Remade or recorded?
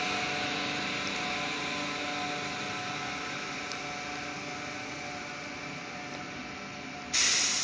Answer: recorded